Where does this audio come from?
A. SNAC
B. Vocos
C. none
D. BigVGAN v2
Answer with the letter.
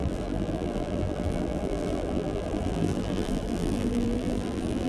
D